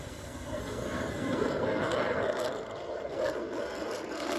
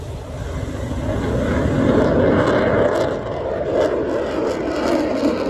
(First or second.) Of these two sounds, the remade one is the first